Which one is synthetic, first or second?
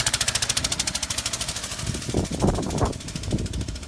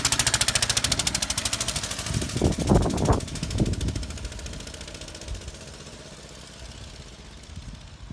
first